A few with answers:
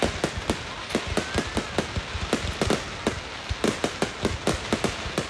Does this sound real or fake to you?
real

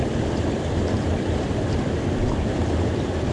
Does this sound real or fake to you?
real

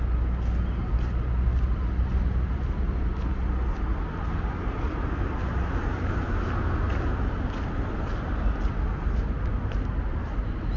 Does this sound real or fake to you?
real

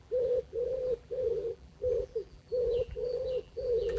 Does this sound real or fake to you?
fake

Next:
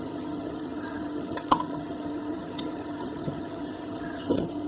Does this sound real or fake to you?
fake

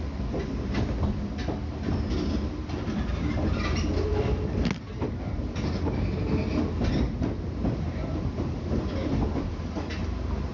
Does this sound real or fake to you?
real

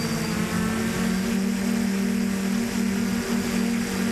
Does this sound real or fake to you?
real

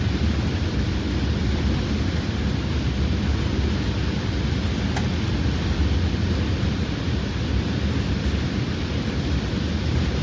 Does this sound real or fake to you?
real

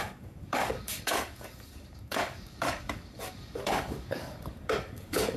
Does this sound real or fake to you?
fake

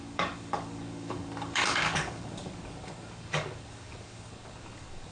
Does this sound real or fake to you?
fake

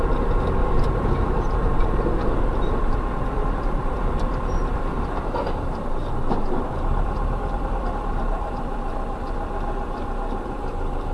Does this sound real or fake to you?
fake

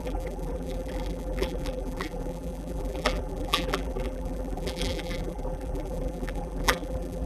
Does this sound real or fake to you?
fake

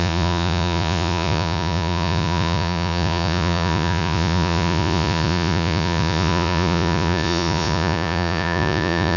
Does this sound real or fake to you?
fake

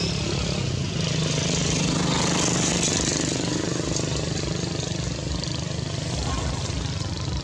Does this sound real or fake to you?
real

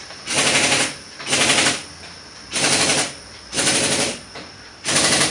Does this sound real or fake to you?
fake